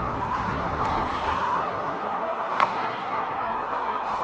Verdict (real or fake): fake